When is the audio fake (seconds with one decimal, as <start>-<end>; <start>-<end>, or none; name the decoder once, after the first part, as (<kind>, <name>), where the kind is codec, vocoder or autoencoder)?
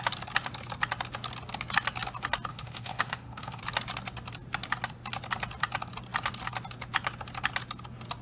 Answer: 2.5-3.6 (autoencoder, DAC-VAE)